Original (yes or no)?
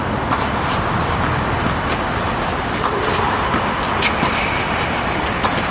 yes